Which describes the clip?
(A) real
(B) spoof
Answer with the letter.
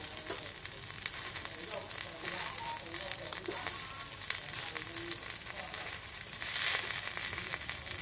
A